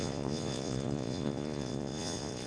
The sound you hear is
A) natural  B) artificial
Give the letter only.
B